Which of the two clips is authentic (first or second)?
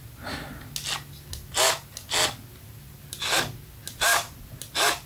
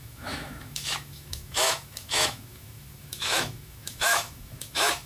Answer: first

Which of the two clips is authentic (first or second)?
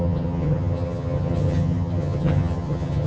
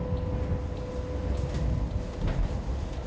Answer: second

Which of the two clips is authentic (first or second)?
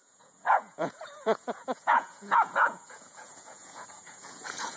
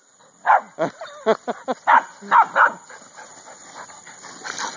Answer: second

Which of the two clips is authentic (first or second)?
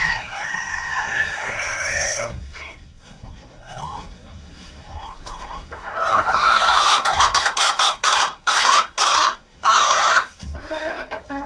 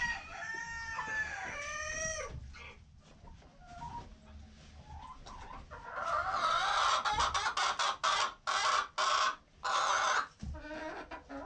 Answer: second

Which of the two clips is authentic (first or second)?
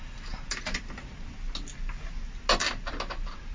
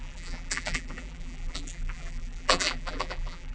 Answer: first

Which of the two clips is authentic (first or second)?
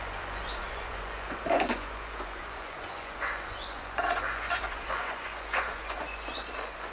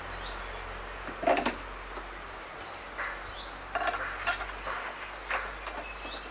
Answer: second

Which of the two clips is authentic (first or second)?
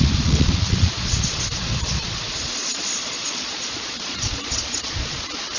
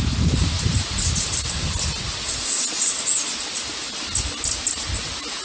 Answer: second